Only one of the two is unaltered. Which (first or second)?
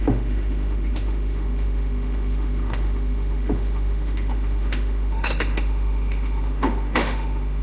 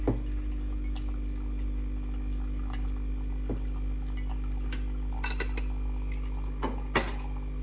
second